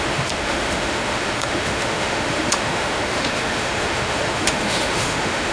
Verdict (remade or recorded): remade